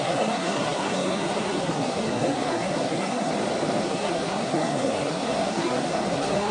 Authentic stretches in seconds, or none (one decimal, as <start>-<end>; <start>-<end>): 3.3-3.8